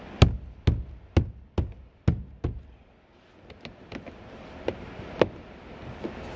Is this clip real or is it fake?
real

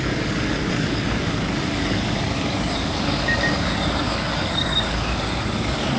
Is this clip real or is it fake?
fake